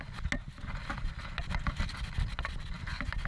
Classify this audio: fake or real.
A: real